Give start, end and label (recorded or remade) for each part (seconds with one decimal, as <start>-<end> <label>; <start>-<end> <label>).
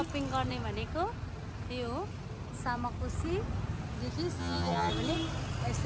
0.0-4.4 recorded; 4.4-4.9 remade; 4.9-5.9 recorded